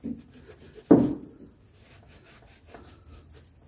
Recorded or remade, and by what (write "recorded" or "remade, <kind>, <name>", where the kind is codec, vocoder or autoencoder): recorded